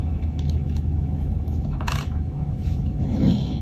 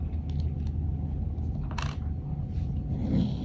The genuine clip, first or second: second